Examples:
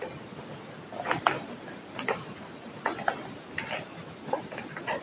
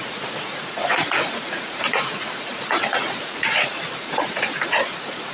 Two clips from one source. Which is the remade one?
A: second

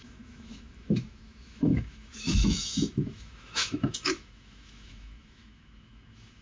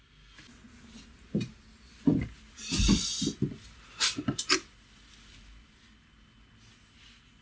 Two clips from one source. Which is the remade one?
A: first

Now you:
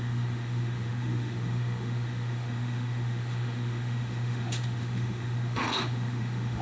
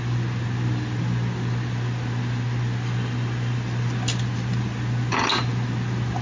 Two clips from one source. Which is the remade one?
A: first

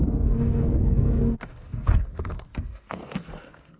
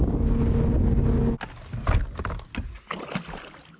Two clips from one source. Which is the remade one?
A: first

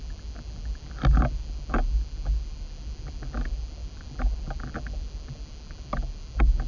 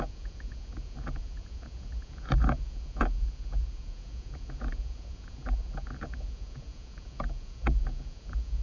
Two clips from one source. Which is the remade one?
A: second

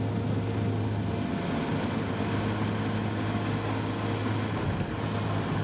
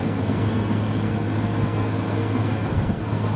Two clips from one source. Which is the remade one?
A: second